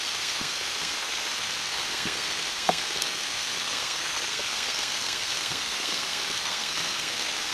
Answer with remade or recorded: remade